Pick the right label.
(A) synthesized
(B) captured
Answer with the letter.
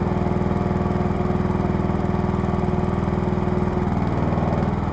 B